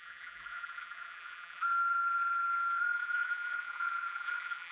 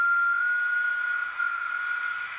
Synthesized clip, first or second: first